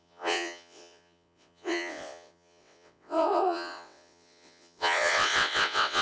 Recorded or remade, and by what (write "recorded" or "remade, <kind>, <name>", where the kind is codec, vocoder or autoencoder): remade, vocoder, WaveNeXt